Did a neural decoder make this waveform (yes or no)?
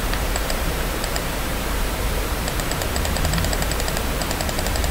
yes